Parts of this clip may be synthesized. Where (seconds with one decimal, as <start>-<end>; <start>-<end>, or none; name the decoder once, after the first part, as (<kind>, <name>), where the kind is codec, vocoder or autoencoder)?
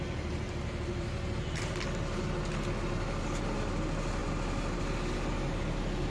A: none